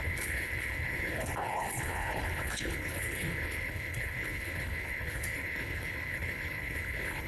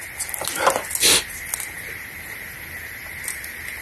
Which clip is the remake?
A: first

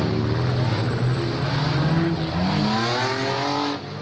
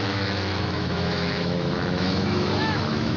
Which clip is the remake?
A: second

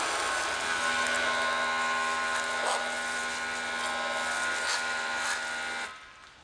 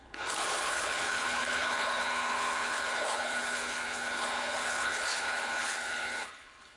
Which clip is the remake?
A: second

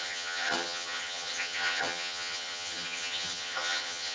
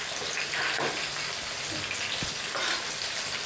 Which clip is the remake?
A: first